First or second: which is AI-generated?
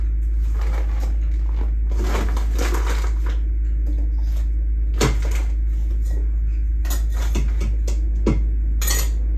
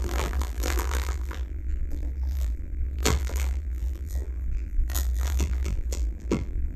second